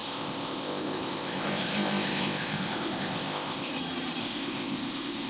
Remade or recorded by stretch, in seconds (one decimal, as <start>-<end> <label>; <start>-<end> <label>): 0.0-3.7 remade; 3.7-4.2 recorded; 4.2-5.3 remade